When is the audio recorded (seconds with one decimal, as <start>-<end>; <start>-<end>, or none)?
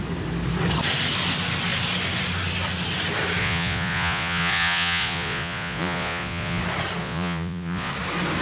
0.0-3.4; 6.6-7.0; 7.9-8.4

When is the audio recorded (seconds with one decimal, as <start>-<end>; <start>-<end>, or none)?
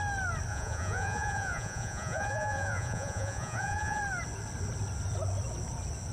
0.0-0.5; 4.0-6.1